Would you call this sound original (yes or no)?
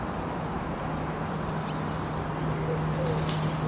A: yes